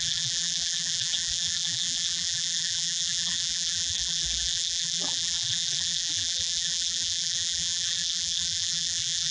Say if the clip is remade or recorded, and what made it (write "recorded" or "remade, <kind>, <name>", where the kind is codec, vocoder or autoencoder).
remade, vocoder, BigVGAN v2